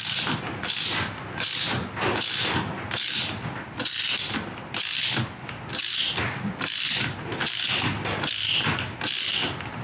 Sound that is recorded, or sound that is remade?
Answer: recorded